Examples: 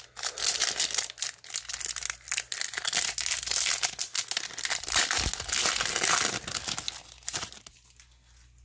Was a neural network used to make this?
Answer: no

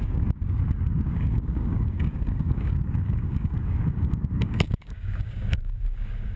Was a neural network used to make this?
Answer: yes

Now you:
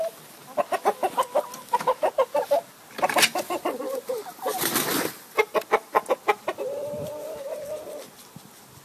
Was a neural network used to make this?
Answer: no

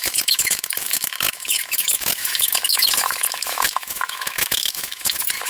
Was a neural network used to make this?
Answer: yes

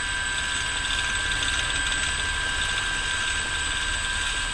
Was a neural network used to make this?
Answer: no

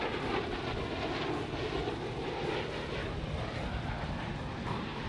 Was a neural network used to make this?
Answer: no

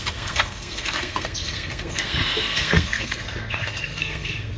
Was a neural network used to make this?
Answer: yes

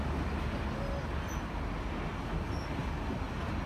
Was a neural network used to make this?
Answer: no